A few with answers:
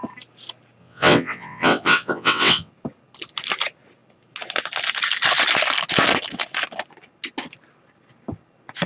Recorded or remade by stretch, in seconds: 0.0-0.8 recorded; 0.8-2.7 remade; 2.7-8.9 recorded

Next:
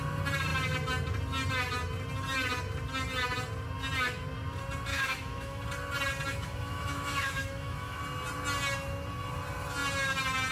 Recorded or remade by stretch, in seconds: 0.0-4.9 recorded; 4.9-5.6 remade; 5.6-6.3 recorded; 6.3-8.0 remade; 8.0-10.5 recorded

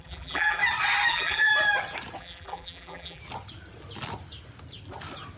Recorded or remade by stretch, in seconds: 0.0-0.6 remade; 0.6-1.1 recorded; 1.1-1.5 remade; 1.5-2.2 recorded; 2.2-3.2 remade; 3.2-5.4 recorded

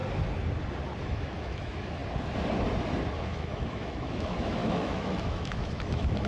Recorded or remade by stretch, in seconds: 0.0-1.0 recorded; 1.0-2.0 remade; 2.0-3.2 recorded; 3.2-6.3 remade

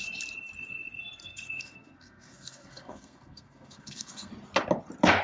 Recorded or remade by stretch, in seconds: 0.0-1.2 recorded; 1.2-4.3 remade; 4.3-5.2 recorded

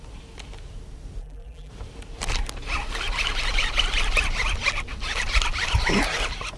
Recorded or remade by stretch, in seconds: 0.0-1.2 recorded; 1.2-1.7 remade; 1.7-6.6 recorded